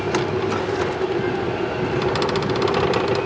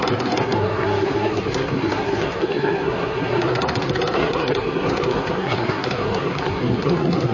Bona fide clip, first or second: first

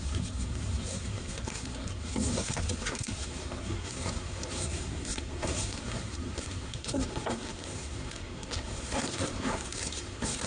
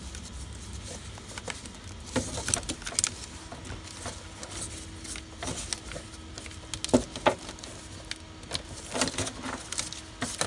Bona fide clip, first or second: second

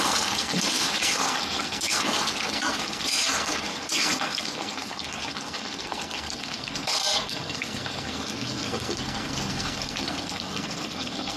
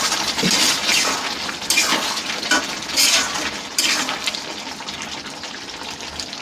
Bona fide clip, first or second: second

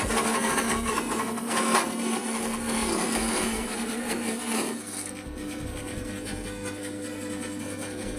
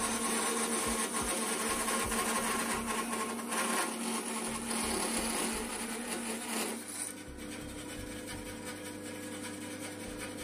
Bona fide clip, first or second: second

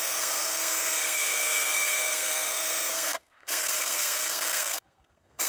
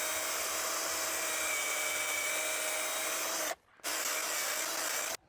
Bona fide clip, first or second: second